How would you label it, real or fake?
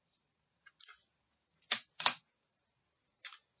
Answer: fake